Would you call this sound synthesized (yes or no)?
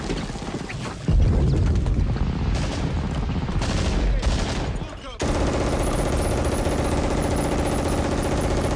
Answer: no